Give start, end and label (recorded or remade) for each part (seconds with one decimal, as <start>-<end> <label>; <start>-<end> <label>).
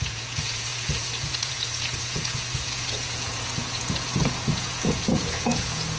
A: 0.0-6.0 remade